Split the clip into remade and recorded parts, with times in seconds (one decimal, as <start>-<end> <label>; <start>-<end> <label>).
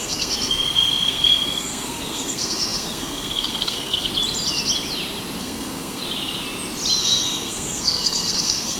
0.0-4.1 remade; 4.1-5.4 recorded; 5.4-6.0 remade; 6.0-7.0 recorded; 7.0-8.8 remade